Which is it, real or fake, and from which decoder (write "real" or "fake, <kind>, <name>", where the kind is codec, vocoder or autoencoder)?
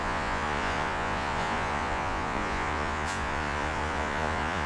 fake, vocoder, Vocos